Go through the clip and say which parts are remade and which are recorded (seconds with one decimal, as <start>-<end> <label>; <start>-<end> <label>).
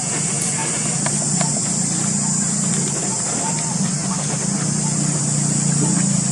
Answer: 0.0-6.3 recorded